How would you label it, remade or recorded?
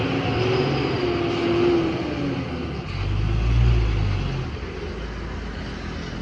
recorded